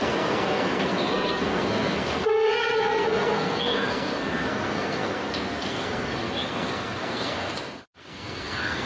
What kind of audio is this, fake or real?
fake